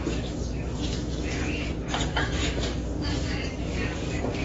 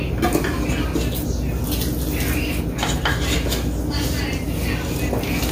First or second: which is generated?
first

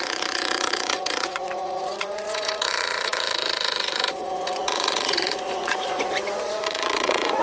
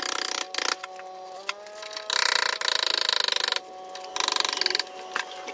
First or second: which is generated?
first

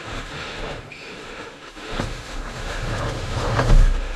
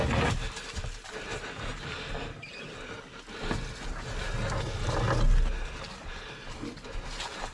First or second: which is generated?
first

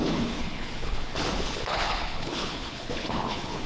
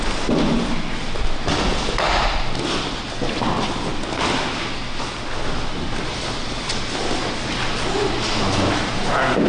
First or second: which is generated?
first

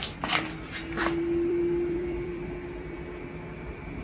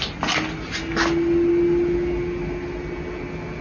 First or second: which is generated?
first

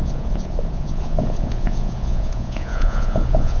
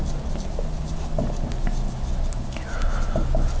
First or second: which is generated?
first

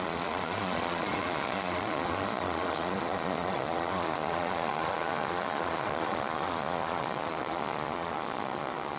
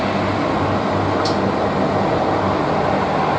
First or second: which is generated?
first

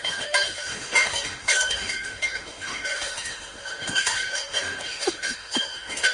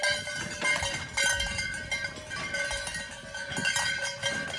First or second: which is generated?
first